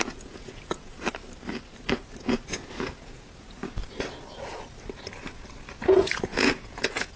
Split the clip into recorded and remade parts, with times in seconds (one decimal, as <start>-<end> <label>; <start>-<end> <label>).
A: 0.0-1.0 remade; 1.0-2.8 recorded; 2.8-3.6 remade; 3.6-5.8 recorded; 5.8-7.2 remade